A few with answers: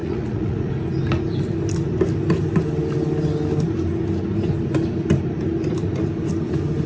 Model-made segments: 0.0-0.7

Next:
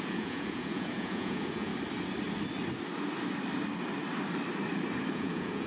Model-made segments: 0.0-1.7; 5.1-5.7

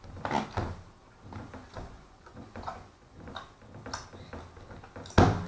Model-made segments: 1.6-3.3

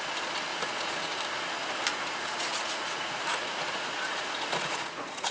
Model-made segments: 0.5-1.2; 1.9-5.3

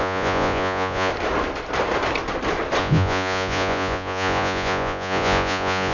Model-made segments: 0.0-1.1; 2.8-5.9

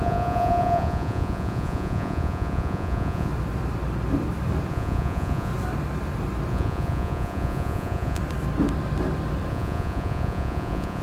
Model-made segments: 0.0-3.3; 4.7-5.5; 6.5-8.2; 9.5-11.0

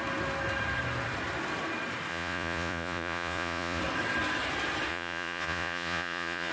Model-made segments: 2.1-3.8; 4.9-6.5

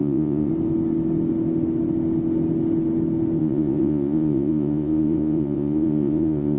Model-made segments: 0.0-0.5; 3.4-6.6